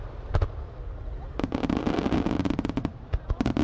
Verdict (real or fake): real